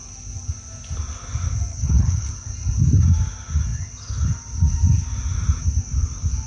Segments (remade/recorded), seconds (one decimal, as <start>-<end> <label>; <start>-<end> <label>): 0.0-1.7 recorded; 1.7-2.3 remade; 2.3-6.5 recorded